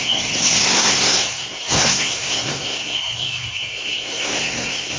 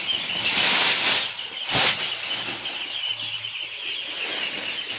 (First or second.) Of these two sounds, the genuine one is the second